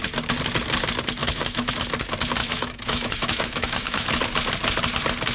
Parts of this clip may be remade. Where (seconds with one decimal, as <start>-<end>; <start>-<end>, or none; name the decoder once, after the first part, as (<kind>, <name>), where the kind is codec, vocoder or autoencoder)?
1.2-1.7 (autoencoder, DAC-VAE); 2.4-4.2